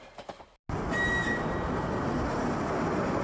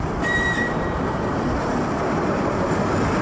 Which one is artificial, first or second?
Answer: second